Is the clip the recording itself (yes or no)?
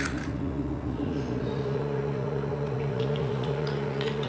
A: no